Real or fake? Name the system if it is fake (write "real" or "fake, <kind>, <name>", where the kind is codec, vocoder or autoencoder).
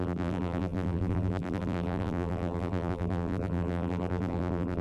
fake, vocoder, BigVGAN v2